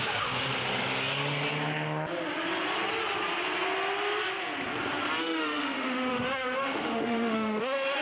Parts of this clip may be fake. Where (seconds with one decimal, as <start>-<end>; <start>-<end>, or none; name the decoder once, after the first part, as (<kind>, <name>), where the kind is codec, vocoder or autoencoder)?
0.0-0.5 (autoencoder, DAC-VAE); 5.2-8.0

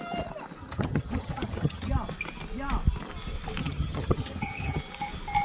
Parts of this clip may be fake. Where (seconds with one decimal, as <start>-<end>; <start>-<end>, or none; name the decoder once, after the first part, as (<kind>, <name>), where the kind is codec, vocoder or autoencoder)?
0.6-1.9 (vocoder, HiFi-GAN); 3.6-4.8

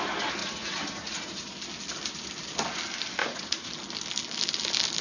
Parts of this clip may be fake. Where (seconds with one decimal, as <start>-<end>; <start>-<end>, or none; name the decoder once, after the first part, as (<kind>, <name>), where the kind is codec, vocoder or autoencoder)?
0.4-1.4 (vocoder, Vocos); 3.2-3.7

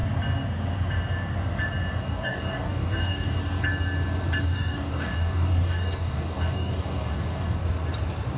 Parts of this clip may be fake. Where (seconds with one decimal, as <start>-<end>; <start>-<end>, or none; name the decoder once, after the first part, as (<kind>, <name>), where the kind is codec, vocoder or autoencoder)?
2.0-3.4 (codec, DAC); 4.4-7.6

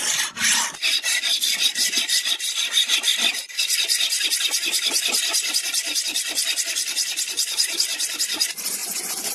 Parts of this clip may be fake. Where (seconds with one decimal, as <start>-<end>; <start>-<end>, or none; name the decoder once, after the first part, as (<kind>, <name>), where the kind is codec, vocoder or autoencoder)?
8.8-9.3 (vocoder, Vocos)

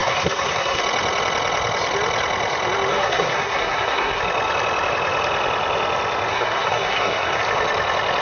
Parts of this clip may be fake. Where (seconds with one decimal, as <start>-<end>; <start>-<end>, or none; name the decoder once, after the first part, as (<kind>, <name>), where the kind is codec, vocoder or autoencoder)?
0.0-0.8 (codec, SNAC); 2.9-4.2; 6.3-7.4